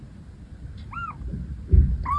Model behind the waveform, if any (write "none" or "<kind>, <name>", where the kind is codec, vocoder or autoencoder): none